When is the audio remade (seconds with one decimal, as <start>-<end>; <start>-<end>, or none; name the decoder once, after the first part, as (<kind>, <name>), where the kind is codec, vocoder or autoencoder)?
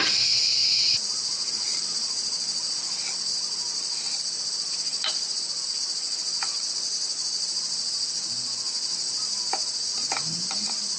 0.6-1.9 (vocoder, BigVGAN v2)